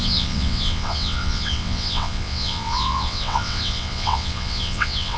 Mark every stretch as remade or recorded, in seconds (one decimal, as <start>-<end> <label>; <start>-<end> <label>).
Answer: 0.0-5.2 remade